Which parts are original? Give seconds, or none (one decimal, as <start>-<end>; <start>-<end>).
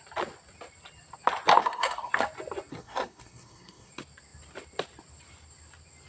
0.0-1.6; 2.1-2.7; 3.9-6.1